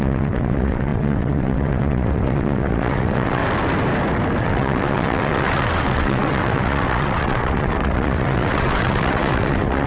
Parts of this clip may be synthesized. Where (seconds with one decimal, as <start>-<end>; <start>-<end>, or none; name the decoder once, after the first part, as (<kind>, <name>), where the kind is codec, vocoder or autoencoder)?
0.0-3.4 (vocoder, WaveNeXt); 4.4-9.9